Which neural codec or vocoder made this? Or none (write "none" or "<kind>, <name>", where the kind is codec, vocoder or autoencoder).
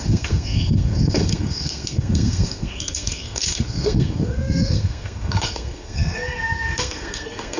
codec, SNAC